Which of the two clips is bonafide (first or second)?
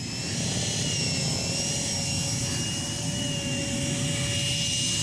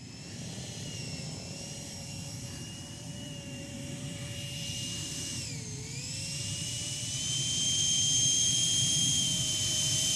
first